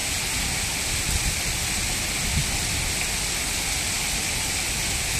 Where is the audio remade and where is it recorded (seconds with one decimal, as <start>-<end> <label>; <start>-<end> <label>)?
0.0-0.6 recorded; 0.6-1.8 remade; 1.8-4.0 recorded; 4.0-5.2 remade

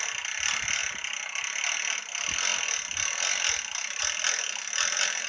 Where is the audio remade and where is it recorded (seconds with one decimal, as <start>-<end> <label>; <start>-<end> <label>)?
0.0-5.3 recorded

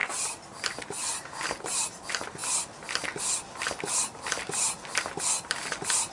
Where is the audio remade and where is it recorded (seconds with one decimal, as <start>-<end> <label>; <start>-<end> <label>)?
0.0-6.1 recorded

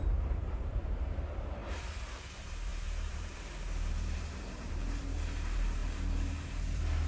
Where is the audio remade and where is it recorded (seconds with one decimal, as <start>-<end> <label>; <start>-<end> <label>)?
0.0-1.6 remade; 1.6-2.2 recorded; 2.2-7.1 remade

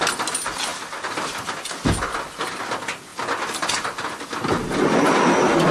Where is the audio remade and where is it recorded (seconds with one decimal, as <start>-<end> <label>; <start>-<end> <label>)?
0.0-5.7 recorded

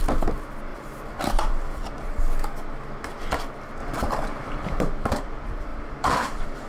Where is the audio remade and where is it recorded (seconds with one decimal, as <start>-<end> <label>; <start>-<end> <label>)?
0.0-0.7 recorded; 0.7-2.1 remade; 2.1-3.8 recorded; 3.8-4.8 remade; 4.8-5.7 recorded; 5.7-6.7 remade

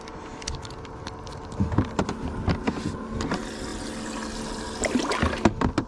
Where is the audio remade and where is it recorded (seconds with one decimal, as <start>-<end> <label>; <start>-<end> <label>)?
0.0-5.9 recorded

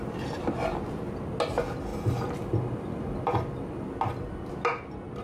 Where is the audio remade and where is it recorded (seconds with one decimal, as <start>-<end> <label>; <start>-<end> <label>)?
0.0-1.9 recorded; 1.9-3.2 remade; 3.2-5.2 recorded